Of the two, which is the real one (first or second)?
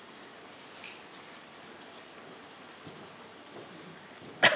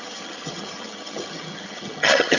first